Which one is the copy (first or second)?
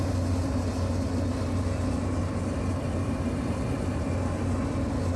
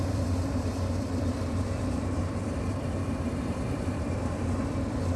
second